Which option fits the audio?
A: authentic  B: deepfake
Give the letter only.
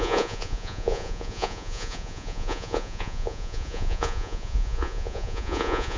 B